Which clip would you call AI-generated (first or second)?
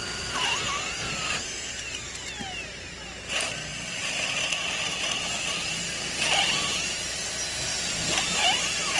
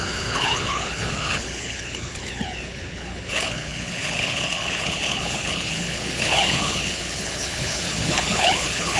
second